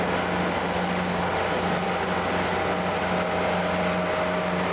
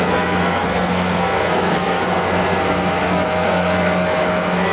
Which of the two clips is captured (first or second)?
first